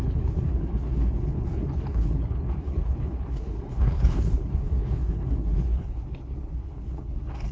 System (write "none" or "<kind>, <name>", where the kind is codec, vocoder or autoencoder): codec, HILCodec